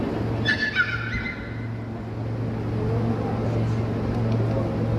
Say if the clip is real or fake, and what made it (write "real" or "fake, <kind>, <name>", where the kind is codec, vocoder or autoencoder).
real